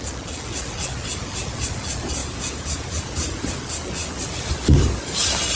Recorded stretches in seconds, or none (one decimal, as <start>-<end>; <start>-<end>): 0.0-2.2; 3.5-5.6